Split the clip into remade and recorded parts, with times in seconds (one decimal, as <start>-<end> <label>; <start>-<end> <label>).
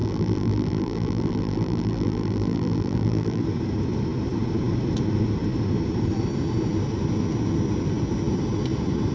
0.0-3.4 remade; 3.4-9.1 recorded